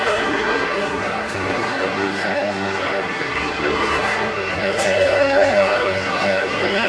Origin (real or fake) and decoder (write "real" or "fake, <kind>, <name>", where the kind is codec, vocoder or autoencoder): fake, codec, SNAC